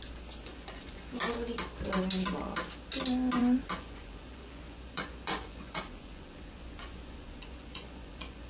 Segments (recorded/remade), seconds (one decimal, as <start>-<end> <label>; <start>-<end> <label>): 0.0-0.4 recorded; 0.4-1.2 remade; 1.2-3.4 recorded; 3.4-8.5 remade